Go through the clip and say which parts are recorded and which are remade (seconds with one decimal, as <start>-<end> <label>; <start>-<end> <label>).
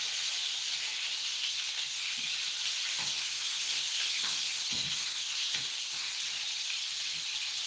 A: 0.0-0.8 recorded; 0.8-2.1 remade; 2.1-3.0 recorded; 3.0-6.2 remade; 6.2-7.7 recorded